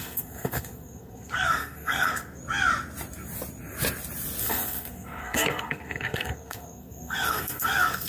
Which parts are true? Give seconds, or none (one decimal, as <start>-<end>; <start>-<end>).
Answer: 2.4-4.4